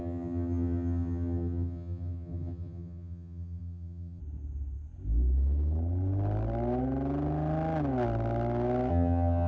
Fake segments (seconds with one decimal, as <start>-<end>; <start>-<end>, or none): 0.0-4.2; 8.9-9.5